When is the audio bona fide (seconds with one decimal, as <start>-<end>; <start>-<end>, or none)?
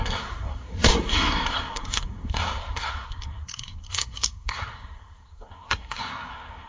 none